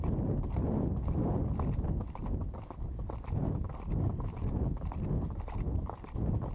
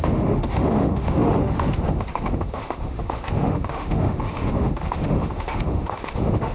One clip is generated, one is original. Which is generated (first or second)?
second